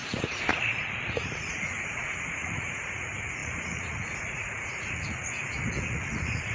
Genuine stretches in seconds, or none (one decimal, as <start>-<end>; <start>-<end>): none